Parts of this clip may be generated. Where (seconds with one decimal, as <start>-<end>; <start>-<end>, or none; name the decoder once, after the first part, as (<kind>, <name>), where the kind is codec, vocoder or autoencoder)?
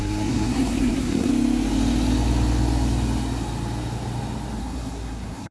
0.0-1.3 (codec, SNAC); 4.6-5.5